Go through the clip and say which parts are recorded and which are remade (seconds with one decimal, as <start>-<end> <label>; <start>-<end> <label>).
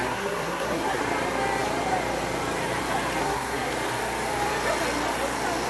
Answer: 0.0-1.0 remade; 1.0-3.2 recorded; 3.2-3.7 remade; 3.7-5.7 recorded